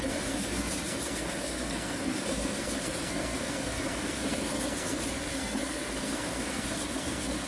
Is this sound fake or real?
fake